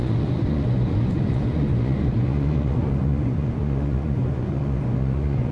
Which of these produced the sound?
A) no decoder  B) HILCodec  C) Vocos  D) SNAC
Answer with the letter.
C